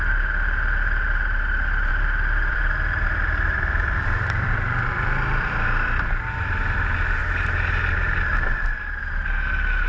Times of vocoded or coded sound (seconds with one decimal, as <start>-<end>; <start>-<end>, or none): 1.9-6.4

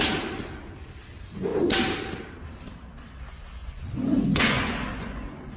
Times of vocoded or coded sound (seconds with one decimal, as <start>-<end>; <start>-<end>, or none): 3.6-5.6

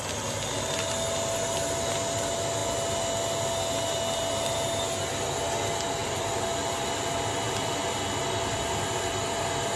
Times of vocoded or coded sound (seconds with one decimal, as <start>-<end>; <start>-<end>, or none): 6.0-8.0

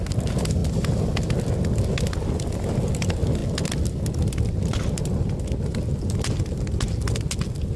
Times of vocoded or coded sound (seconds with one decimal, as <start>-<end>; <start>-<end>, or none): none

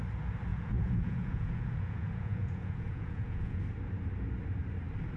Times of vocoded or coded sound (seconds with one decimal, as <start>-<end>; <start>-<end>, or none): 0.5-3.6

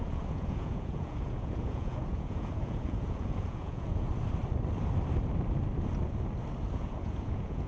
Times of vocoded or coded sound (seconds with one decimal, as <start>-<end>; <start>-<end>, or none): 0.0-4.1; 6.7-7.7

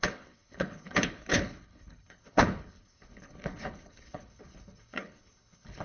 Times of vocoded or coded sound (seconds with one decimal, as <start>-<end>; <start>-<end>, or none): 0.0-5.8